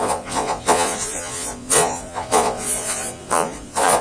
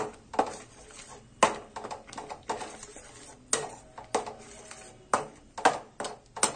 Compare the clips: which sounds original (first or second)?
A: second